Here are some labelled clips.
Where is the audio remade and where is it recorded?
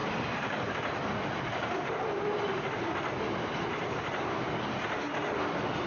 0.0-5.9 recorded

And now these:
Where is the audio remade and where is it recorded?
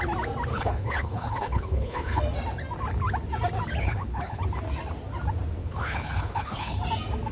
0.0-0.5 recorded; 0.5-2.2 remade; 2.2-3.8 recorded; 3.8-4.4 remade; 4.4-5.6 recorded; 5.6-6.8 remade; 6.8-7.3 recorded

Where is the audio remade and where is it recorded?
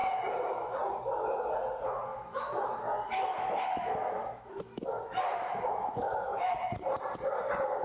0.0-2.1 recorded; 2.1-6.8 remade; 6.8-7.8 recorded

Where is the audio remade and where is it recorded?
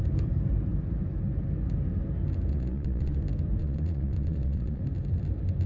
0.0-2.5 recorded; 2.5-3.2 remade; 3.2-3.6 recorded; 3.6-4.8 remade; 4.8-5.7 recorded